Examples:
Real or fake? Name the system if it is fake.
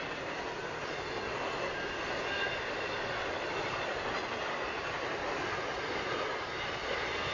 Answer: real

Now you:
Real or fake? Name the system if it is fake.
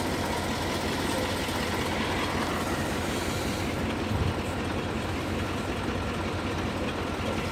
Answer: real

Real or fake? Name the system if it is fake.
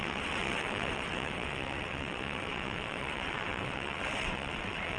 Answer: fake, vocoder, WaveNeXt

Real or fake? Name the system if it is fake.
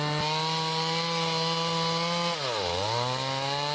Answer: real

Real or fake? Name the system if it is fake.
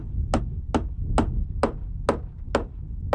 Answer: real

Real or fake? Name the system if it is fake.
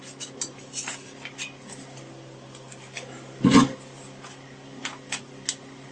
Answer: real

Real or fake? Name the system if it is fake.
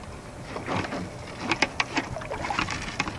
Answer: real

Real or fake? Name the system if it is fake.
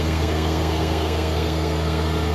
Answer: fake, codec, SNAC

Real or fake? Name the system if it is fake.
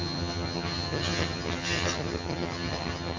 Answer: fake, vocoder, HiFi-GAN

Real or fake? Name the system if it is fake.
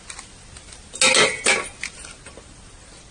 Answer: real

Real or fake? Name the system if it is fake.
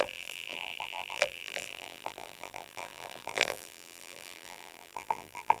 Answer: fake, vocoder, BigVGAN v2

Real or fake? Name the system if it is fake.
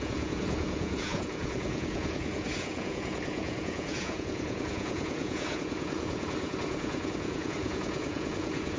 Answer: fake, vocoder, Vocos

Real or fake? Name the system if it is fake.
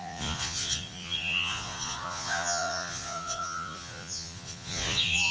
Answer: fake, vocoder, Vocos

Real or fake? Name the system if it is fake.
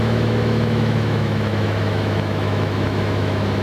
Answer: fake, autoencoder, DAC-VAE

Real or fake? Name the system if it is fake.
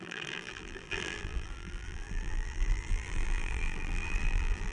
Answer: fake, vocoder, BigVGAN v2